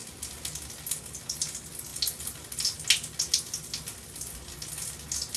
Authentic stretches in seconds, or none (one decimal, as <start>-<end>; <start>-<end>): 0.0-5.4